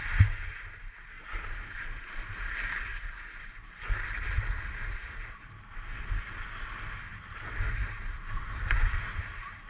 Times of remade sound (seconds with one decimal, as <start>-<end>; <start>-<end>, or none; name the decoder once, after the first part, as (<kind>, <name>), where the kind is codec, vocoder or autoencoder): none